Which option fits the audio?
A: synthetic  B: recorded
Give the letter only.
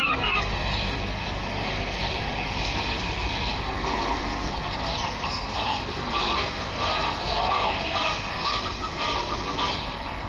A